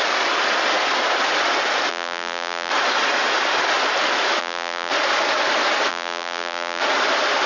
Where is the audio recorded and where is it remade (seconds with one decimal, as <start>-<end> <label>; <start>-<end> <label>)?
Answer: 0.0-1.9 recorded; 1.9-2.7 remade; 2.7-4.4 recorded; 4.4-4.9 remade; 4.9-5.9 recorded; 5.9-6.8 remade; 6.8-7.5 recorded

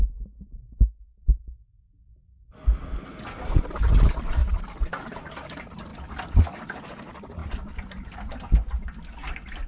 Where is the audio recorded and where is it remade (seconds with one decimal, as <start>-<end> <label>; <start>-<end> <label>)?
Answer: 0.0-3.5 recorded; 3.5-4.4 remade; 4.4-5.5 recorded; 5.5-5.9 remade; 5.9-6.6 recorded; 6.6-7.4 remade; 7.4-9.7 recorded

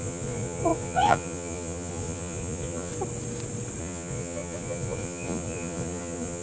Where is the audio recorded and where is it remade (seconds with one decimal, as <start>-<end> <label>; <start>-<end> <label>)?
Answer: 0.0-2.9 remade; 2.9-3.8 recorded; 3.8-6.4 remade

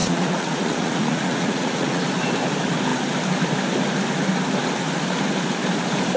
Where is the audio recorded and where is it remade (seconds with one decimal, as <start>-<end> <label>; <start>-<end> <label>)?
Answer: 0.0-2.0 remade; 2.0-6.2 recorded